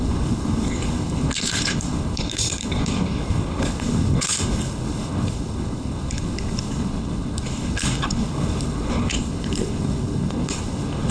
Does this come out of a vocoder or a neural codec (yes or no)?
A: yes